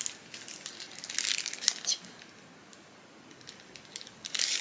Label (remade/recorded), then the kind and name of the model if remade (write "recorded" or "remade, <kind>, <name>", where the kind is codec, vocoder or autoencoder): recorded